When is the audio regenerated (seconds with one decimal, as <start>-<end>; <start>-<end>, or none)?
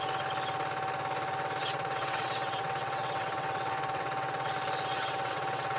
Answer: 1.6-4.5; 4.9-5.8